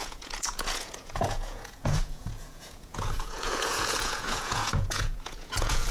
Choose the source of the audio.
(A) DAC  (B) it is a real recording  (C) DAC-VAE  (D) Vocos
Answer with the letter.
D